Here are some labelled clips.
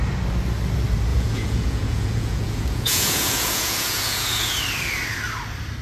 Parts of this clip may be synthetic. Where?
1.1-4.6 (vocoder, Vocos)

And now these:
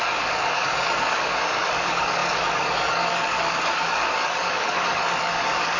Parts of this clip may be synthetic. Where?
0.0-5.8 (codec, DAC)

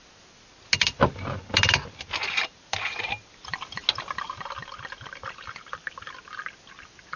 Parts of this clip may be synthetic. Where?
0.0-0.5 (vocoder, BigVGAN v2); 2.6-3.8; 5.5-7.2

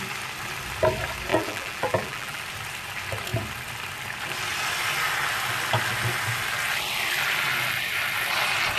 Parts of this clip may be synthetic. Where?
1.3-2.4 (vocoder, BigVGAN v2)